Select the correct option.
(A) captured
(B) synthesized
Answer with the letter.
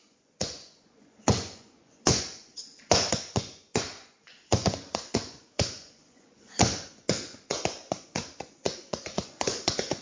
B